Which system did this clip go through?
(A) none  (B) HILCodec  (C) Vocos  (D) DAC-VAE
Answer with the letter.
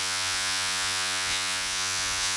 C